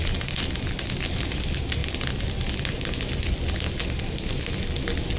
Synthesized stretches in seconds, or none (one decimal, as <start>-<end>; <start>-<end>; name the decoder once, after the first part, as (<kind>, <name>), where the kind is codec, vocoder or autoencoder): none